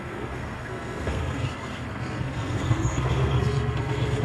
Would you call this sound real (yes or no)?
no